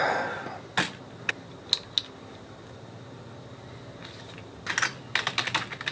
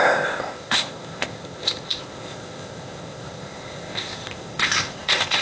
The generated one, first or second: second